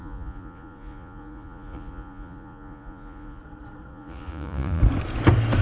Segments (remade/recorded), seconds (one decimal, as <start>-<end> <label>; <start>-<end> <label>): 0.0-3.4 remade; 3.4-3.9 recorded; 3.9-4.8 remade; 4.8-5.6 recorded